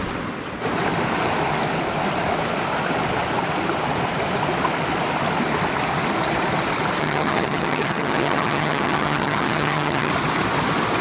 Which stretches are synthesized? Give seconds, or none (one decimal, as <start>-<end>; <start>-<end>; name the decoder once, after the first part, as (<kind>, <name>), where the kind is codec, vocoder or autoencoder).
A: 7.0-10.1 (vocoder, HiFi-GAN)